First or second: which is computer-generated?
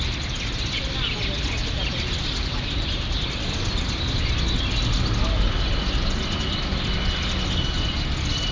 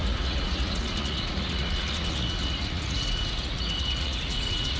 second